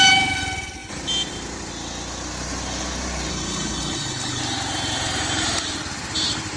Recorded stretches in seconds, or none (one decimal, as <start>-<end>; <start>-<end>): 0.0-3.3; 4.4-6.6